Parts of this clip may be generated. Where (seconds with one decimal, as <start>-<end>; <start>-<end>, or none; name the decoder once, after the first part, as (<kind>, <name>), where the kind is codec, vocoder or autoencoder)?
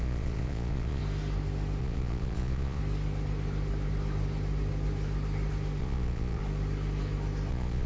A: 0.0-1.0 (vocoder, Vocos); 1.8-2.8; 5.8-6.4; 7.5-7.9